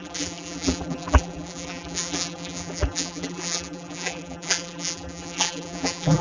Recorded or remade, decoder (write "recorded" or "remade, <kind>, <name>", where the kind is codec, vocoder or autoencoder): remade, vocoder, BigVGAN v2